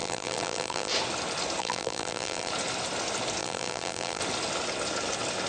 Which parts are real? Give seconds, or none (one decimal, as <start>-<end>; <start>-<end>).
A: 0.9-1.6; 2.5-3.4; 4.2-5.5